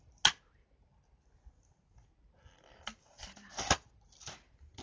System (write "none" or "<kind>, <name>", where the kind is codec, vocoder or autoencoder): none